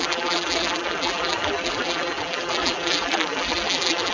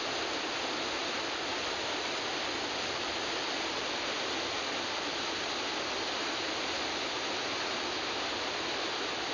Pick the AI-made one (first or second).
first